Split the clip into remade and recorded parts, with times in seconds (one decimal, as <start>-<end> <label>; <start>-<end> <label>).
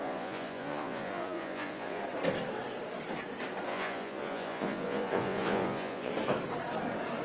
0.0-2.0 remade; 2.0-3.7 recorded; 3.7-6.1 remade; 6.1-7.2 recorded